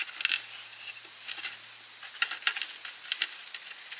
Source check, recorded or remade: recorded